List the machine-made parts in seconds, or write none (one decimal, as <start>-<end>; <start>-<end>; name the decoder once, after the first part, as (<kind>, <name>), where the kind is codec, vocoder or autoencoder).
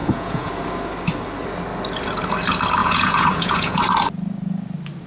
0.0-0.5 (vocoder, Vocos); 2.8-3.8